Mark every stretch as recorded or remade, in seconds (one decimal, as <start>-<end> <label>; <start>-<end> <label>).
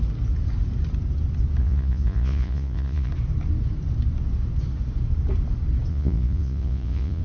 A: 0.0-1.6 recorded; 1.6-3.1 remade; 3.1-5.9 recorded; 5.9-7.2 remade